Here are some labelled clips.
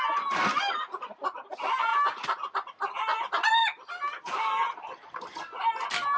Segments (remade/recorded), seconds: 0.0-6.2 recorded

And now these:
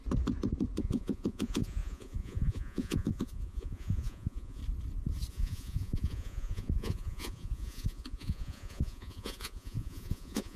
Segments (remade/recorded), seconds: 0.0-0.8 recorded; 0.8-4.6 remade; 4.6-5.3 recorded; 5.3-10.6 remade

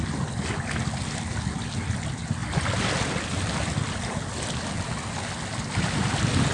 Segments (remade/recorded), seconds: 0.0-6.5 recorded

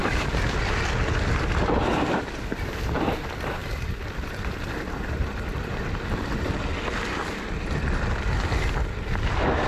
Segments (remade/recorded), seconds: 0.0-0.6 remade; 0.6-1.9 recorded; 1.9-3.1 remade; 3.1-3.6 recorded; 3.6-6.2 remade; 6.2-9.7 recorded

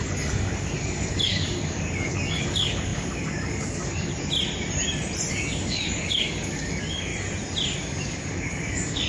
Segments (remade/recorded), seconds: 0.0-4.1 remade; 4.1-5.3 recorded; 5.3-7.1 remade; 7.1-7.8 recorded; 7.8-9.1 remade